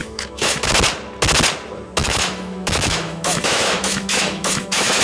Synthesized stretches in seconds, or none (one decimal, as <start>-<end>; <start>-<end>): 0.0-0.7; 2.0-5.0